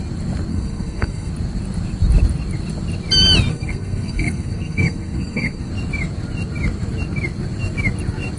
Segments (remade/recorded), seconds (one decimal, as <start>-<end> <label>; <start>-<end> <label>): 0.0-0.5 recorded; 0.5-1.3 remade; 1.3-3.5 recorded; 3.5-5.7 remade; 5.7-8.4 recorded